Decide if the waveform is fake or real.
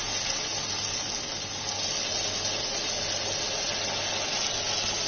real